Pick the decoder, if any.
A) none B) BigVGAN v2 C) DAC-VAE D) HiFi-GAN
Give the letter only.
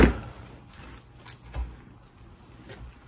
A